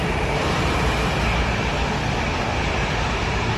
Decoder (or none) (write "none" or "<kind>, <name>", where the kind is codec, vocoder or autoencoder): none